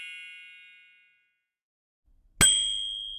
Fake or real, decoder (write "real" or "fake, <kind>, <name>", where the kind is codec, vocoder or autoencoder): real